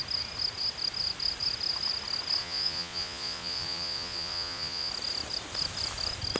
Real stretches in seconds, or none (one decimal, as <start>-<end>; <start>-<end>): 0.0-2.4; 4.9-6.4